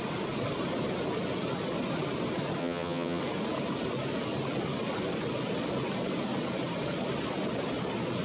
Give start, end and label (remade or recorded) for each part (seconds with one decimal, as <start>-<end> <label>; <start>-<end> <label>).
0.0-2.6 recorded; 2.6-3.2 remade; 3.2-8.2 recorded